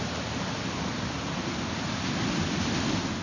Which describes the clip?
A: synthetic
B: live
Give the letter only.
B